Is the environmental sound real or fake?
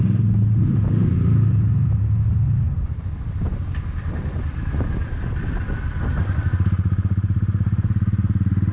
real